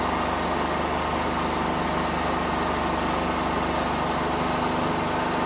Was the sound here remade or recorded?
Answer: recorded